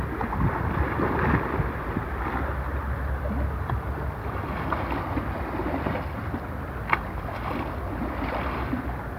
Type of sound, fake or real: real